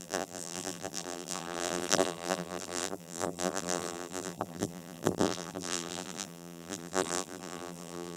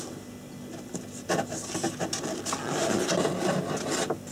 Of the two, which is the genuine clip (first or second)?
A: second